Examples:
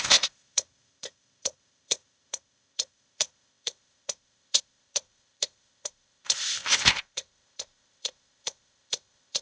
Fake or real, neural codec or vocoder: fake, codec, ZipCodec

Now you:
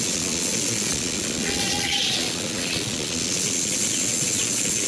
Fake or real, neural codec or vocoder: fake, vocoder, Vocos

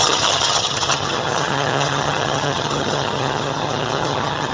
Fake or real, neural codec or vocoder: fake, vocoder, HiFi-GAN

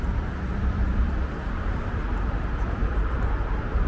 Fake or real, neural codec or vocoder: fake, vocoder, BigVGAN v2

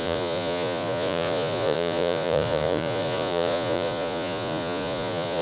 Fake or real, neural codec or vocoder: fake, vocoder, Vocos